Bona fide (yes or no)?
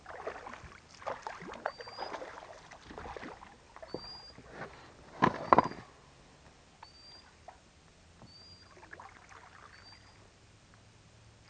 yes